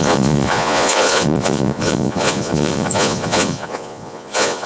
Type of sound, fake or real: fake